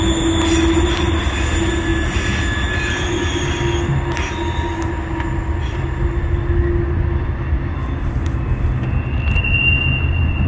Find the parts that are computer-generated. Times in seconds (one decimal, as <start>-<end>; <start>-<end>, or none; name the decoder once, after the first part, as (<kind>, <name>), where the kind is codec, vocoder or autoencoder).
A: none